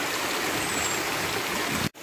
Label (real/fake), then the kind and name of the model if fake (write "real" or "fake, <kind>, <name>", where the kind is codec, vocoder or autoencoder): real